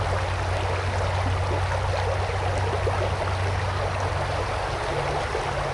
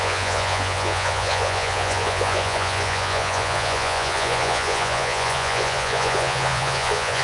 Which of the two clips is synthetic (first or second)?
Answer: second